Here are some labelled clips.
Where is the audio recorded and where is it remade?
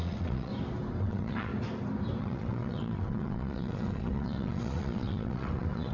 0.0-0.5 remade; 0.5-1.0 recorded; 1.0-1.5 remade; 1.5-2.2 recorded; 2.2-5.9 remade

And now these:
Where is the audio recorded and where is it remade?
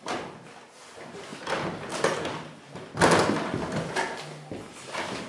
0.0-5.3 recorded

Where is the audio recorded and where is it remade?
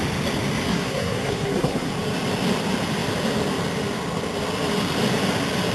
0.0-0.7 recorded; 0.7-1.9 remade; 1.9-5.7 recorded